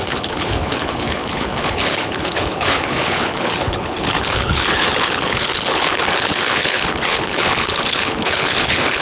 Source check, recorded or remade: remade